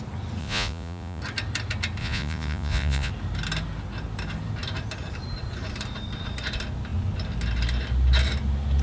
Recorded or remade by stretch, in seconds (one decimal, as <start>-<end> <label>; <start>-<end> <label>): 0.0-0.4 recorded; 0.4-1.2 remade; 1.2-2.0 recorded; 2.0-3.1 remade; 3.1-8.8 recorded